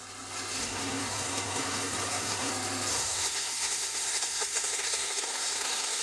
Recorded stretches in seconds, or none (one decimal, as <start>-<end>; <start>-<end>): 0.0-0.6; 2.5-2.9